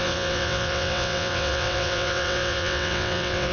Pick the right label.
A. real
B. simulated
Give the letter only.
B